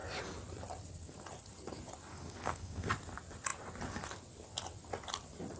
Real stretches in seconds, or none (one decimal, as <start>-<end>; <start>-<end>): 0.0-2.1; 2.9-5.6